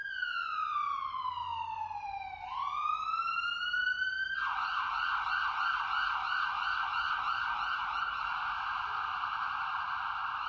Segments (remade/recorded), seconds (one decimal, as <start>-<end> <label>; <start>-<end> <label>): 0.0-6.3 recorded; 6.3-7.2 remade; 7.2-10.5 recorded